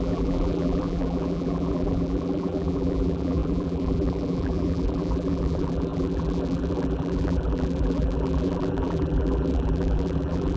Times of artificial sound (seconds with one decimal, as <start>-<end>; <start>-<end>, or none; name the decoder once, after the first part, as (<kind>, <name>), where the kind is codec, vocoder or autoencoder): 0.0-10.6 (vocoder, BigVGAN v2)